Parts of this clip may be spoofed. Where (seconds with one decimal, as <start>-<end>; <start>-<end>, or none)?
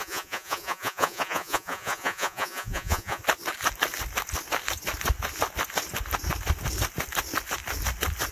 0.0-3.2